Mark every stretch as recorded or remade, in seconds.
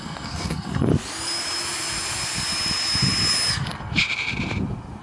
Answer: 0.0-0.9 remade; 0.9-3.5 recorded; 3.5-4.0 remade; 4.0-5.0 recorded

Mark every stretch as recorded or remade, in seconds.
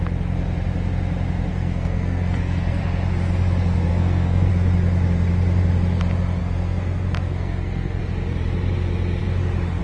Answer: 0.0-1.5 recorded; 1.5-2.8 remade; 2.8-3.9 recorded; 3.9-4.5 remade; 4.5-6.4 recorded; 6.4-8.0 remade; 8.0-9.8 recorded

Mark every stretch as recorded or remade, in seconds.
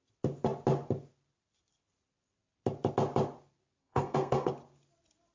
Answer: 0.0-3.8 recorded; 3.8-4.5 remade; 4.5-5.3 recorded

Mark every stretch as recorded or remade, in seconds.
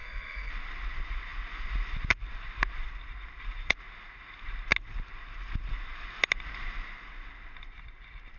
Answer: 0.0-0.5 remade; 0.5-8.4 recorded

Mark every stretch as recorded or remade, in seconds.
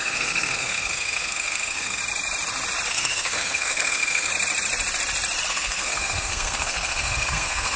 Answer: 0.0-2.0 remade; 2.0-2.9 recorded; 2.9-4.3 remade; 4.3-5.5 recorded; 5.5-7.8 remade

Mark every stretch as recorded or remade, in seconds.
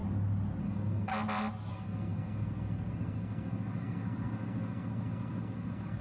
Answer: 0.0-0.6 recorded; 0.6-1.1 remade; 1.1-1.7 recorded; 1.7-6.0 remade